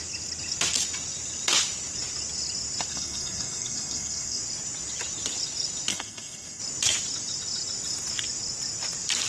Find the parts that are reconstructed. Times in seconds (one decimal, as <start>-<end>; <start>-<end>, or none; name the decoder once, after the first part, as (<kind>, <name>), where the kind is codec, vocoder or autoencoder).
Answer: 2.9-4.4 (codec, SNAC); 5.9-6.6